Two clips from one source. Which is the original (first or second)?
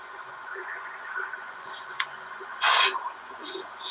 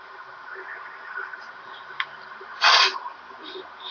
second